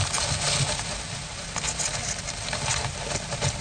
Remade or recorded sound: recorded